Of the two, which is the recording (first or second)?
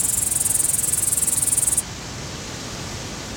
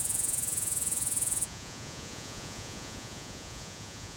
first